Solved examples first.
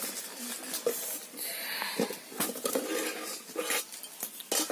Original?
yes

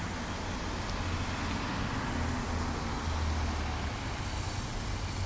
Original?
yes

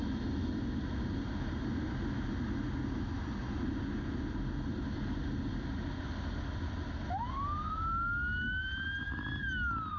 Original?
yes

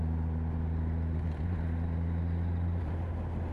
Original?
yes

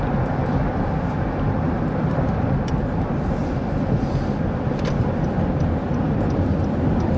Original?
no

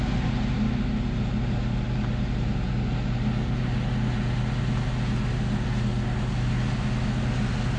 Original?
yes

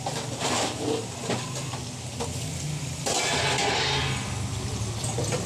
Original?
yes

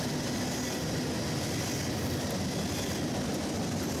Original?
yes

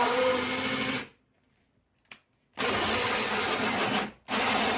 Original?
yes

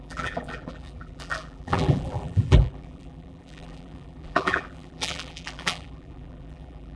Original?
no